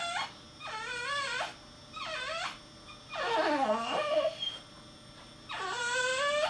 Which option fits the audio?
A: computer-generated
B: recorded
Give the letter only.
B